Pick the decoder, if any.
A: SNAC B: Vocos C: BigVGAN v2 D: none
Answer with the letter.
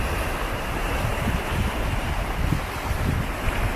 D